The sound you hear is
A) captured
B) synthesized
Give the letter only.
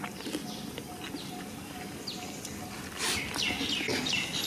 A